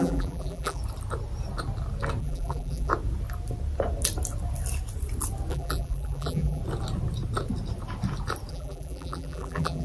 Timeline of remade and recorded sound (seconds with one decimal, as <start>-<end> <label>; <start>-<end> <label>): 0.0-0.8 remade; 0.8-2.2 recorded; 2.2-2.9 remade; 2.9-5.5 recorded; 5.5-6.6 remade; 6.6-8.5 recorded; 8.5-9.8 remade